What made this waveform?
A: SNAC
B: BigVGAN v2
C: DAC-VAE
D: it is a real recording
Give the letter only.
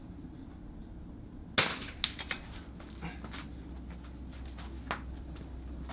D